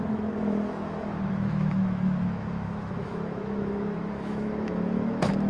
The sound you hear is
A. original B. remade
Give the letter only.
B